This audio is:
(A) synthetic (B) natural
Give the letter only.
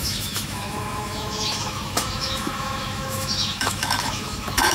A